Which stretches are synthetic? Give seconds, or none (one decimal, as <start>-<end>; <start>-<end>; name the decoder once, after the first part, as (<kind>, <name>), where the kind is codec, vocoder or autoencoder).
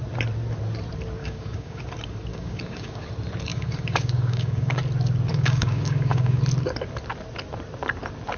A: 1.2-1.8 (codec, DAC); 2.3-3.1; 3.5-4.8; 5.3-6.4